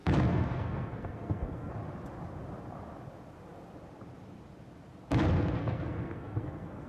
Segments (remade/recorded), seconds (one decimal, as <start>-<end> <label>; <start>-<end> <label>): 0.0-1.7 remade; 1.7-5.6 recorded; 5.6-6.9 remade

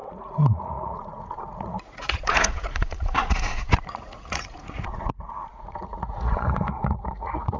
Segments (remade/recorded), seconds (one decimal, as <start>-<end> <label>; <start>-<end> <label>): 0.0-7.6 remade

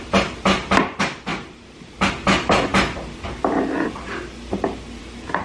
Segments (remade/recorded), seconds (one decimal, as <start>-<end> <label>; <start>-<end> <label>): 0.0-5.4 recorded

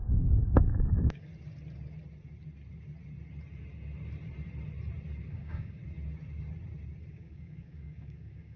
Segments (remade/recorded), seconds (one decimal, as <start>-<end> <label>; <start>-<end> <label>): 0.0-1.3 remade; 1.3-5.3 recorded; 5.3-5.8 remade; 5.8-7.1 recorded; 7.1-8.6 remade